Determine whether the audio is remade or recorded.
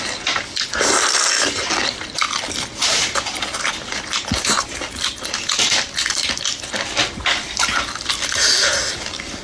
recorded